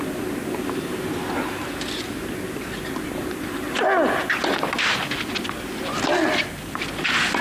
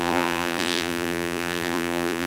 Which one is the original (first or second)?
first